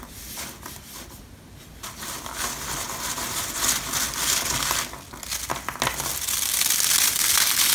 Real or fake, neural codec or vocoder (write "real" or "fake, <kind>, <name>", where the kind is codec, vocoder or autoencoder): real